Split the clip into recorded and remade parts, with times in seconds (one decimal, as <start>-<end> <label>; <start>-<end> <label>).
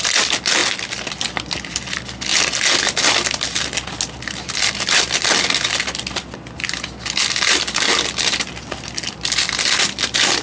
0.0-10.4 recorded